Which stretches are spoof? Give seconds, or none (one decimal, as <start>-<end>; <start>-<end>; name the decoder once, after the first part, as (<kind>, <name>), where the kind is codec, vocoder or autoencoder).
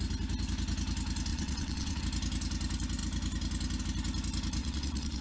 1.3-2.0 (vocoder, WaveNeXt); 4.6-5.2